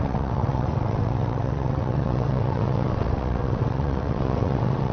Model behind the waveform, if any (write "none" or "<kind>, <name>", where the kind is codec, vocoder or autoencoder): vocoder, WaveNeXt